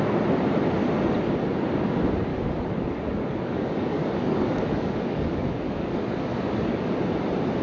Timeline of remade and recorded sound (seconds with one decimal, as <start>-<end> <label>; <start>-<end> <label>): 0.0-2.3 recorded; 2.3-6.9 remade; 6.9-7.6 recorded